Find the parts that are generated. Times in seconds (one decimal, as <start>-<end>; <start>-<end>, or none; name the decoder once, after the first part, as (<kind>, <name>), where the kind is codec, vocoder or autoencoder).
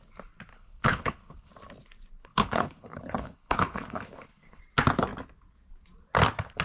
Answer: 0.5-1.5 (codec, HILCodec); 2.2-4.6